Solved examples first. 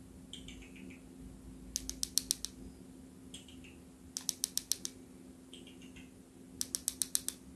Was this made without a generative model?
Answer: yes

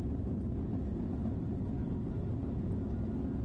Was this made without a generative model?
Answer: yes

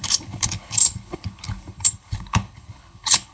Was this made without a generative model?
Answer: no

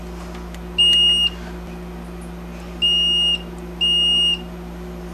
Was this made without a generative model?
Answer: yes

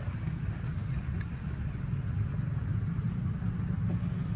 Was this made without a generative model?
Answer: yes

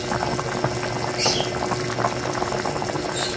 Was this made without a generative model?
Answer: yes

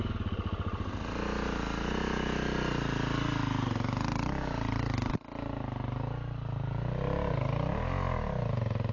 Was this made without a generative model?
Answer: yes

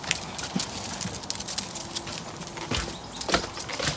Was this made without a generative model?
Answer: yes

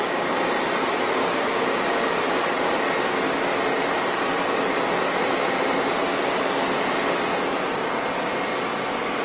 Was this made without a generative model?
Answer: yes